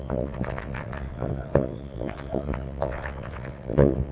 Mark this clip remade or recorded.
remade